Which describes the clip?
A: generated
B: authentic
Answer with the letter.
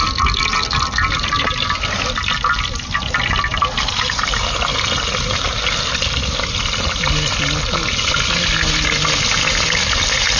B